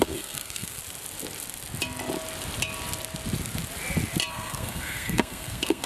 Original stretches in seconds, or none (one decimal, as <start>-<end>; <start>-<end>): 0.8-4.3